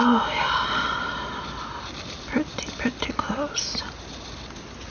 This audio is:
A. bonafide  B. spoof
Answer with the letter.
A